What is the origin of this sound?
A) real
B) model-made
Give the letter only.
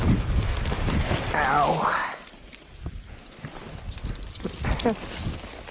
A